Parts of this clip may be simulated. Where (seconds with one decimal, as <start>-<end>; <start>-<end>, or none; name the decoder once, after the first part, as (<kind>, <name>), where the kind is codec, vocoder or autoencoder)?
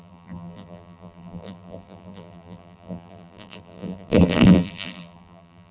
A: 0.0-5.7 (vocoder, BigVGAN v2)